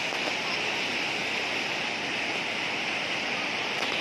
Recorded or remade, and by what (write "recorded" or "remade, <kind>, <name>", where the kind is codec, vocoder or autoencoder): recorded